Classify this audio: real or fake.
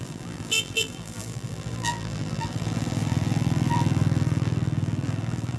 fake